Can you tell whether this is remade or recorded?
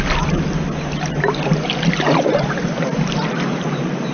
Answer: recorded